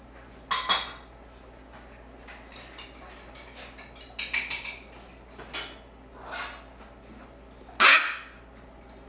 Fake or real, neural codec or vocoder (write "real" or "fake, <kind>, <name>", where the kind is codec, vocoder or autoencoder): real